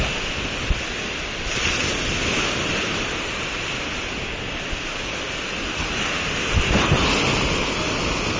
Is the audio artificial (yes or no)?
no